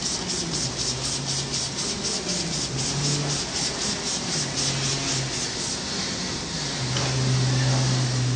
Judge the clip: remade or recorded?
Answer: recorded